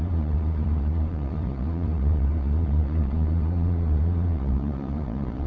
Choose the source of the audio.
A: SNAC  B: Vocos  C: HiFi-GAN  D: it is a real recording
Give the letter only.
B